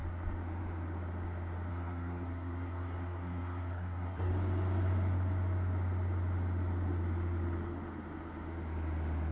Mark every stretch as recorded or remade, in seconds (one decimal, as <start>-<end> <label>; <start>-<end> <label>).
0.0-1.7 recorded; 1.7-4.3 remade; 4.3-9.3 recorded